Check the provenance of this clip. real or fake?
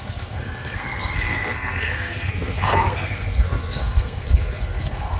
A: fake